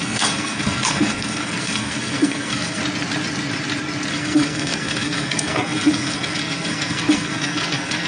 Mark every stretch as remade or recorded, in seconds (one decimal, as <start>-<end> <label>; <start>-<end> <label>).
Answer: 0.0-2.8 remade; 2.8-4.1 recorded; 4.1-8.1 remade